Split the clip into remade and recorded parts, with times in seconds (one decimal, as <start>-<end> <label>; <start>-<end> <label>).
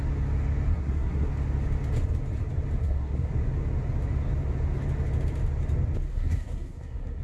0.0-0.7 recorded; 0.7-1.3 remade; 1.3-2.8 recorded; 2.8-3.3 remade; 3.3-6.1 recorded; 6.1-7.2 remade